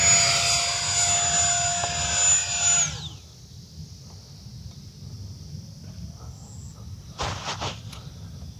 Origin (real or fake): real